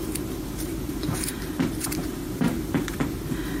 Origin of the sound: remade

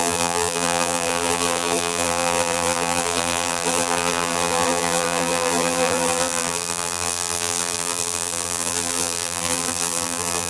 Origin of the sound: remade